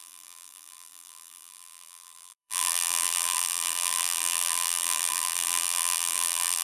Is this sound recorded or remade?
remade